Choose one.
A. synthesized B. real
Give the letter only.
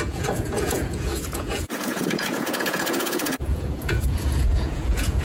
A